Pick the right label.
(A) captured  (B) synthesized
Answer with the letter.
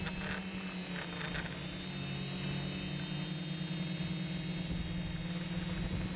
A